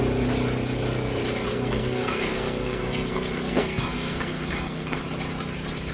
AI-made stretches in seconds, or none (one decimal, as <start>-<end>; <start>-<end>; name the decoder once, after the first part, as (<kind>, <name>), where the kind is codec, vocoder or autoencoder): 1.5-5.0 (codec, SNAC)